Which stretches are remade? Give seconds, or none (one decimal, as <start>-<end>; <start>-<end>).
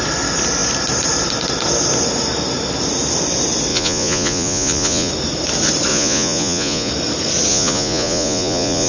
3.7-5.1; 5.9-6.9; 7.5-8.9